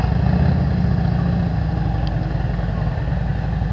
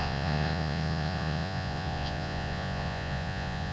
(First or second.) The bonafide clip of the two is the first